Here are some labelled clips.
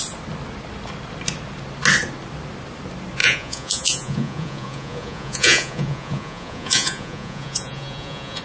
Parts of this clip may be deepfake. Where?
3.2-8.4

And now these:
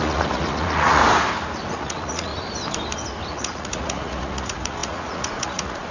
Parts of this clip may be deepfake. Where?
0.0-1.0; 1.7-2.3; 3.3-5.9

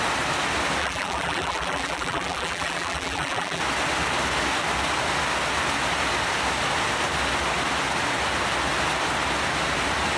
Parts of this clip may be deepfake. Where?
0.8-3.6

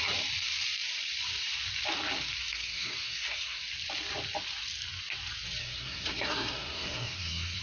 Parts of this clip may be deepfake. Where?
2.5-3.6; 5.6-7.6

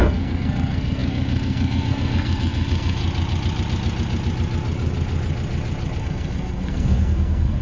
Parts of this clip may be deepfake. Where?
0.0-3.0; 6.0-7.6

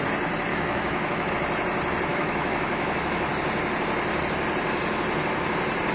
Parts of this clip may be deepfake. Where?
0.5-1.3; 2.1-3.3

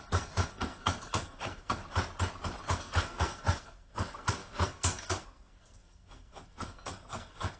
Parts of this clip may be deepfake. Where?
0.0-1.8; 2.7-7.6